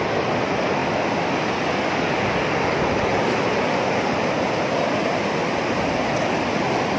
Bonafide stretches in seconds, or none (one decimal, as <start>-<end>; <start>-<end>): 0.0-7.0